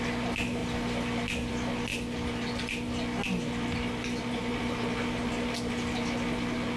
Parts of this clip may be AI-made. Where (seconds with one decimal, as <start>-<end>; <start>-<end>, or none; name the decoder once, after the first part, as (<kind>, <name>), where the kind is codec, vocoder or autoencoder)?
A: none

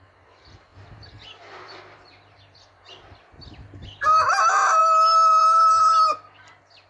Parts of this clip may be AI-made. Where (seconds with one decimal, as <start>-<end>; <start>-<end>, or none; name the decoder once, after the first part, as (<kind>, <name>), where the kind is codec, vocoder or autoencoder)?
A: 0.7-4.8 (vocoder, BigVGAN v2); 5.3-6.5

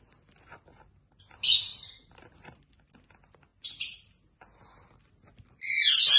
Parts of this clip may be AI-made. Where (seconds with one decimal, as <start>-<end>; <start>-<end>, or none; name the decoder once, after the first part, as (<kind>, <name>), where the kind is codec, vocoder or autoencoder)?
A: 1.7-2.7 (vocoder, BigVGAN v2)

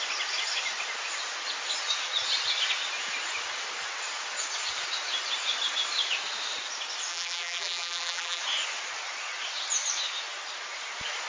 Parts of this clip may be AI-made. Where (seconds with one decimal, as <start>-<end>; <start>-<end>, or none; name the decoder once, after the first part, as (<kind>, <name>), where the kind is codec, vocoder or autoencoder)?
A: 7.1-8.4 (vocoder, BigVGAN v2)

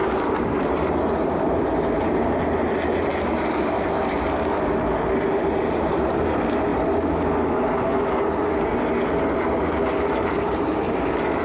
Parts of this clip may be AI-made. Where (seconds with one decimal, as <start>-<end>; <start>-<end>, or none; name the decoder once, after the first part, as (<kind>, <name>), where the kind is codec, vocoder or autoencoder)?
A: 0.0-6.7 (vocoder, BigVGAN v2); 9.3-11.4

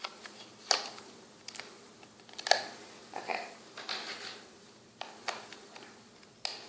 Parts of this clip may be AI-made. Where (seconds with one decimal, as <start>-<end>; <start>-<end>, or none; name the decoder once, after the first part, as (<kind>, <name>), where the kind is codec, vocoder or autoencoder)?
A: none